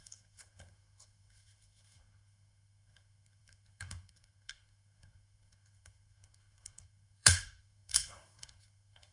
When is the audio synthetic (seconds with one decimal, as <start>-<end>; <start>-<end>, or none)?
0.0-9.1